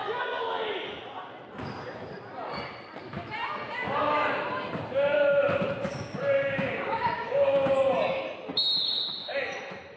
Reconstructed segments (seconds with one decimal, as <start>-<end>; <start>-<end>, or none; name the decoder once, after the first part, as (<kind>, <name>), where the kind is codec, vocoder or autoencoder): 5.9-7.7 (codec, DAC)